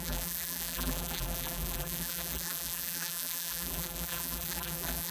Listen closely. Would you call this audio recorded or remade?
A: remade